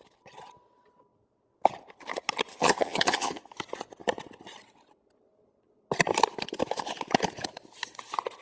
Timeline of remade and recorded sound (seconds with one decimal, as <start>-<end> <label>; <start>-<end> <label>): 0.0-2.5 recorded; 2.5-3.4 remade; 3.4-8.4 recorded